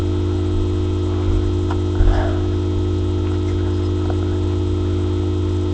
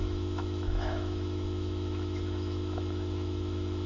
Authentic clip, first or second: first